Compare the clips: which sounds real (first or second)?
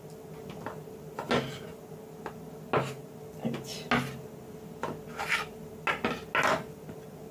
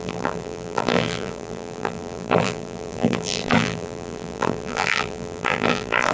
first